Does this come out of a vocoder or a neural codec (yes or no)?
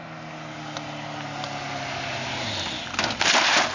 no